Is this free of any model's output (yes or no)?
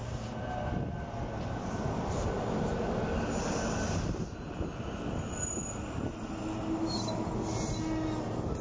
yes